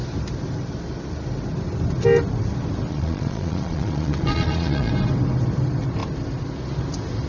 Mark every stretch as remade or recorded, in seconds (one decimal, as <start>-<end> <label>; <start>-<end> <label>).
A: 0.0-2.9 recorded; 2.9-4.9 remade; 4.9-7.3 recorded